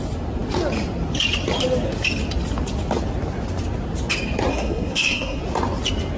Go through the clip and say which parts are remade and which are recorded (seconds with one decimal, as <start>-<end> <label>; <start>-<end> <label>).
0.0-4.5 recorded; 4.5-5.4 remade; 5.4-6.2 recorded

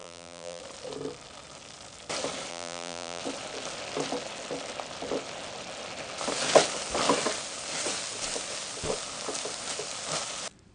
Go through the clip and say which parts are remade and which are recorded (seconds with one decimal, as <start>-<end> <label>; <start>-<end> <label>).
0.0-0.6 remade; 0.6-2.5 recorded; 2.5-3.2 remade; 3.2-10.7 recorded